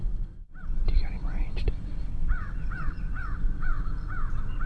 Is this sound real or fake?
fake